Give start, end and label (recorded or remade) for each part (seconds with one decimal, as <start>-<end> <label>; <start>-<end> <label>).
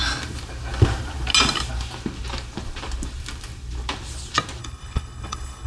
0.0-4.6 recorded; 4.6-5.7 remade